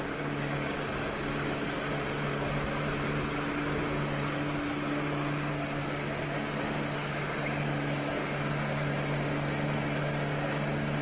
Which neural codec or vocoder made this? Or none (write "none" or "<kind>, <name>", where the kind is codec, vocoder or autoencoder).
none